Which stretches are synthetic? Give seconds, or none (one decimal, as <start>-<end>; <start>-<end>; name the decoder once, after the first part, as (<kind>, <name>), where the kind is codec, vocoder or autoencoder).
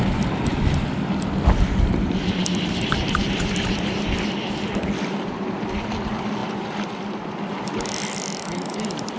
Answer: none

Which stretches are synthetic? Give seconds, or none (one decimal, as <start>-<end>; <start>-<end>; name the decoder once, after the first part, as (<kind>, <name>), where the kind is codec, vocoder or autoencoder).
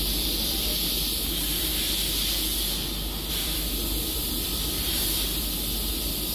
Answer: 0.0-1.7 (vocoder, BigVGAN v2); 3.3-6.3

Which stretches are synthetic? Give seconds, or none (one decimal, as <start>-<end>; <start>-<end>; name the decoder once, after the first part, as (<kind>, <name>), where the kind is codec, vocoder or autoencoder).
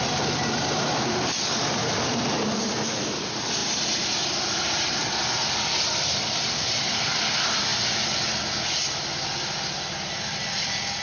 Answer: 0.0-7.7 (vocoder, BigVGAN v2); 8.6-11.0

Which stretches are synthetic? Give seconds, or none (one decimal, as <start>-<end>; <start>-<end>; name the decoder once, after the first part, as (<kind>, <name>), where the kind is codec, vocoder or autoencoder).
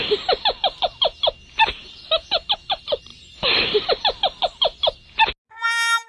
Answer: 3.1-3.9 (vocoder, BigVGAN v2)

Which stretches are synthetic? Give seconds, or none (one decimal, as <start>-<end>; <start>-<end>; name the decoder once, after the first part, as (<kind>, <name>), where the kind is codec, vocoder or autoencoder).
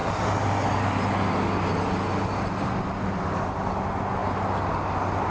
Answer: none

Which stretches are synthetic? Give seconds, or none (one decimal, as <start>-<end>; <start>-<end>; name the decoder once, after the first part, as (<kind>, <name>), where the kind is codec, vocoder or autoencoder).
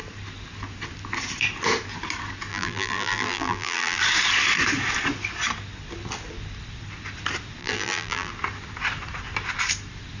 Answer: 2.5-4.0 (vocoder, BigVGAN v2); 7.6-8.3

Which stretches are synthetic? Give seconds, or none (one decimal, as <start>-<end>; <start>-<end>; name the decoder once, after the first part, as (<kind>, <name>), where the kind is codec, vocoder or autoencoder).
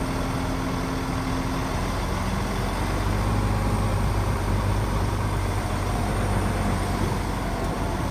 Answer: 1.6-2.3 (vocoder, BigVGAN v2); 3.9-6.5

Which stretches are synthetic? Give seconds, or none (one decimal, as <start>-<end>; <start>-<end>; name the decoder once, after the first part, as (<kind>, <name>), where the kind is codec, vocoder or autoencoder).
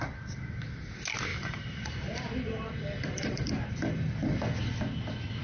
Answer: 1.3-4.4 (vocoder, BigVGAN v2)